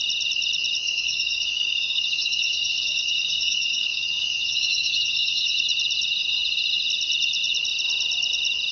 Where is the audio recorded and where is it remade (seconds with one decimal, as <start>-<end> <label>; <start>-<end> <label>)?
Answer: 0.0-0.8 recorded; 0.8-5.6 remade; 5.6-8.7 recorded